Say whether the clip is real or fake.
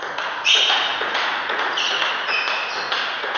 fake